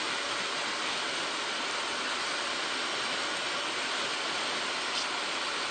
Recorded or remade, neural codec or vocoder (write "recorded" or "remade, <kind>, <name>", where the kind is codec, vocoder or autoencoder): recorded